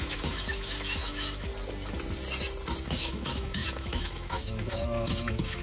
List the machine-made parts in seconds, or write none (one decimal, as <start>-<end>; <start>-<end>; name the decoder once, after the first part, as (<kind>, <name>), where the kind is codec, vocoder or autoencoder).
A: 0.0-1.5 (autoencoder, DAC-VAE); 2.8-5.6